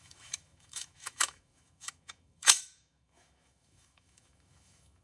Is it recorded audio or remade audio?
remade